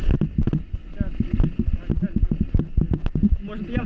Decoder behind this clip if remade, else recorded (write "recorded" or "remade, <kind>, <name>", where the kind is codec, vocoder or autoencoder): recorded